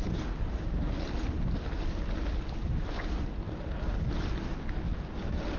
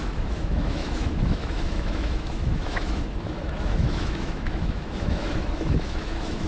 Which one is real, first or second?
first